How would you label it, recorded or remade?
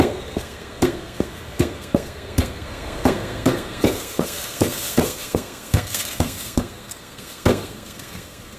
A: remade